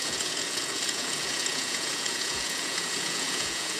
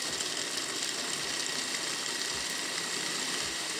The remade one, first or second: first